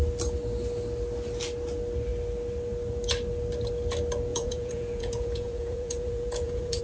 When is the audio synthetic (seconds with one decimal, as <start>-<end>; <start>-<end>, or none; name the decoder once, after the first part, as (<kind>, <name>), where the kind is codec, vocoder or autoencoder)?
4.3-6.8 (vocoder, Vocos)